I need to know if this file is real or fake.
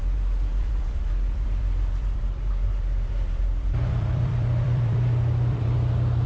fake